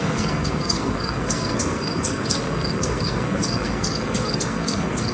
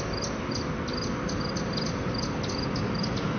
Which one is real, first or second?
second